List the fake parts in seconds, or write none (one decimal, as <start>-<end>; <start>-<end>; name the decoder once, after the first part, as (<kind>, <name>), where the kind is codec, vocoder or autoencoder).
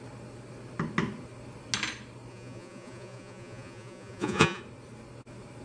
2.3-4.6 (vocoder, Vocos)